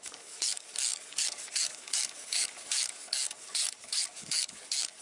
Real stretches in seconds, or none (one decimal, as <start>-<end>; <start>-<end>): none